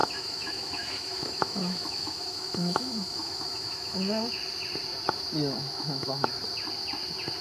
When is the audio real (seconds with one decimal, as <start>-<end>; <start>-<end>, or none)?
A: 4.4-5.6; 6.4-7.4